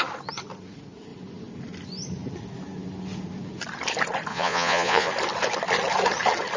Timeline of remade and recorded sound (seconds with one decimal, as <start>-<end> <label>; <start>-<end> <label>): 0.0-4.3 recorded; 4.3-5.1 remade; 5.1-6.6 recorded